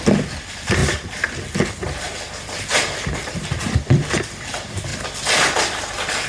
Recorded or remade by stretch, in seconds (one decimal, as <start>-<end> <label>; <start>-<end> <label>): 0.0-0.8 remade; 0.8-3.3 recorded; 3.3-4.9 remade; 4.9-6.3 recorded